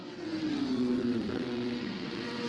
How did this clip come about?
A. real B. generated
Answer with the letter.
B